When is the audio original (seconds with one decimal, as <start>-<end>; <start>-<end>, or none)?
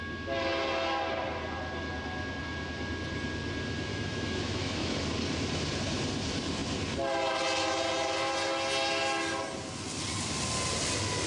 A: 0.0-3.9; 5.0-11.3